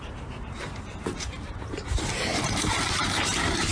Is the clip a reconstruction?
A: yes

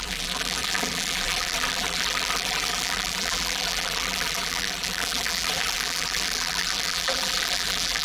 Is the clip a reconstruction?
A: yes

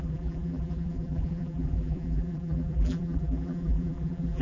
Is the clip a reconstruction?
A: yes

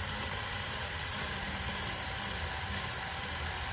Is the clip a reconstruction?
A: yes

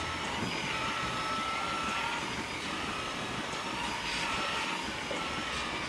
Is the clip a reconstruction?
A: no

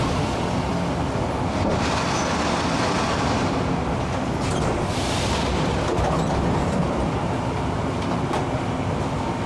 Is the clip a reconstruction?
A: no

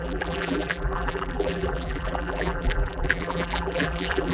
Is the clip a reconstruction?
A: yes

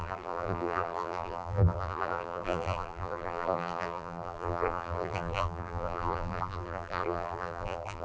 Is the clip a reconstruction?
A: yes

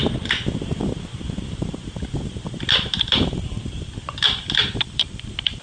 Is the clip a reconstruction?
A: yes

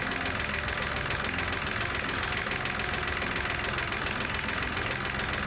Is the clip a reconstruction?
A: no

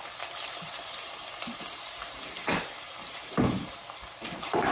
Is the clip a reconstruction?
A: yes